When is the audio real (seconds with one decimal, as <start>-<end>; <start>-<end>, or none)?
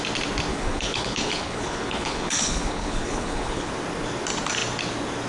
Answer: 0.0-0.5; 3.7-5.3